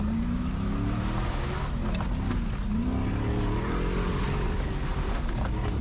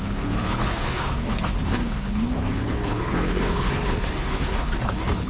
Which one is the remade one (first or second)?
second